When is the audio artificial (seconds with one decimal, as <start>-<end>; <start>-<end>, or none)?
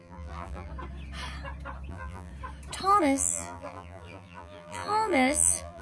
0.0-0.7; 1.9-2.3; 3.0-5.8